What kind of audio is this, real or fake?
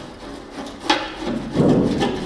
real